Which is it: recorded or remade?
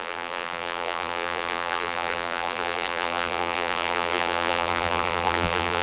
remade